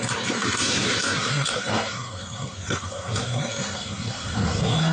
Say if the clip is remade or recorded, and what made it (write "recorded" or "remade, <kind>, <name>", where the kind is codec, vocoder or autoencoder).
remade, codec, SNAC